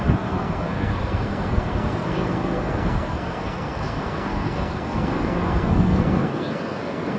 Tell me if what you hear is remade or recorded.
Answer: remade